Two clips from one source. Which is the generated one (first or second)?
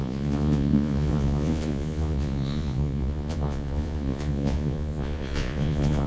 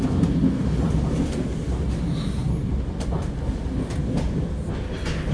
first